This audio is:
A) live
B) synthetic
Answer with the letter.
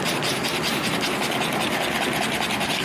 A